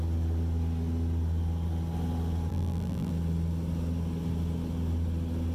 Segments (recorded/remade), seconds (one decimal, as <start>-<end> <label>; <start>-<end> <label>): 0.0-2.5 recorded; 2.5-3.1 remade; 3.1-5.5 recorded